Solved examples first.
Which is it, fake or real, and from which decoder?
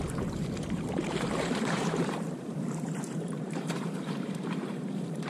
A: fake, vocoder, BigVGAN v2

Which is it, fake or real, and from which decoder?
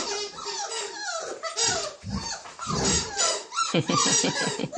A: fake, vocoder, BigVGAN v2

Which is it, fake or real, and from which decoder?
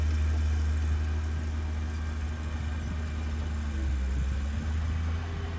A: real